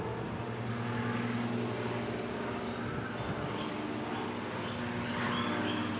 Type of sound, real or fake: real